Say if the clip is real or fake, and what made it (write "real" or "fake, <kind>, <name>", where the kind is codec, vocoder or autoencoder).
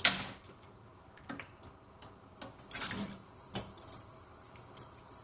real